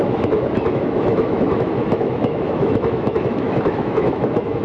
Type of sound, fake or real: fake